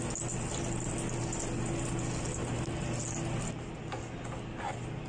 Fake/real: real